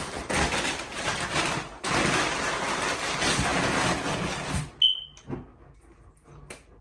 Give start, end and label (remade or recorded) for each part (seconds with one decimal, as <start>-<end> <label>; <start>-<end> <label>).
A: 0.0-1.4 remade; 1.4-6.8 recorded